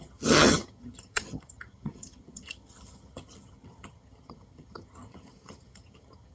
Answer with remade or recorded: remade